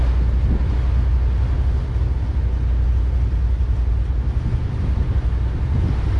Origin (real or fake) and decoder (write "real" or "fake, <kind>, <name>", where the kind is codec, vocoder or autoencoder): real